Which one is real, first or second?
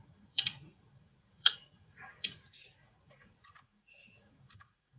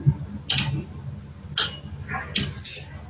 second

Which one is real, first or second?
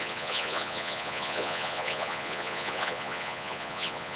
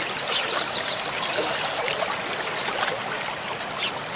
second